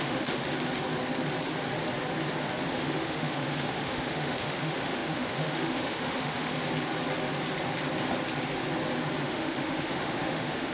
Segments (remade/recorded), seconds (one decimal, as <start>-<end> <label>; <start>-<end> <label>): 0.0-0.5 remade; 0.5-2.7 recorded; 2.7-6.5 remade; 6.5-9.2 recorded; 9.2-10.7 remade